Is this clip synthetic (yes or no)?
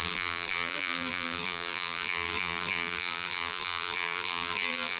yes